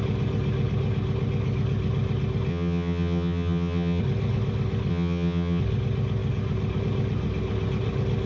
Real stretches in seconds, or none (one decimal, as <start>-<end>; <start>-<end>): 0.0-2.5; 4.0-4.9; 5.6-8.3